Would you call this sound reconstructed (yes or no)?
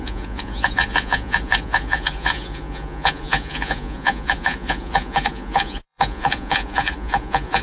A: yes